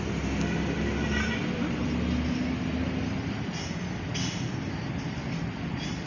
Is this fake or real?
real